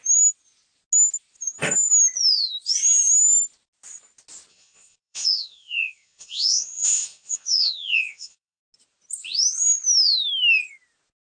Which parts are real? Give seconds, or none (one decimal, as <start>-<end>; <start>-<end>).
0.0-4.5; 8.6-11.3